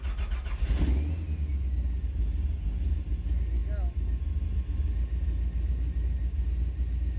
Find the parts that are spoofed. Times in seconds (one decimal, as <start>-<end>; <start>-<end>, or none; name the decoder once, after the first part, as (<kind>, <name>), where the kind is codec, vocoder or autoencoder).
none